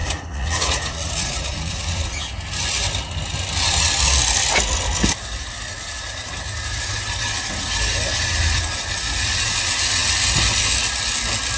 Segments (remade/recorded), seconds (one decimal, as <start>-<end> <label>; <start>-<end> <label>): 0.0-2.3 remade; 2.3-11.6 recorded